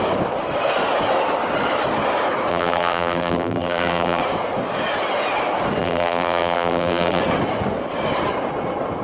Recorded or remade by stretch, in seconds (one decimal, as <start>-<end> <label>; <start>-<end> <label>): 0.0-2.5 recorded; 2.5-4.2 remade; 4.2-5.8 recorded; 5.8-7.2 remade; 7.2-9.0 recorded